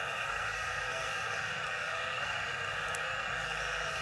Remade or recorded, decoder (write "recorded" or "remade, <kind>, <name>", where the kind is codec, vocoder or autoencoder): remade, codec, SNAC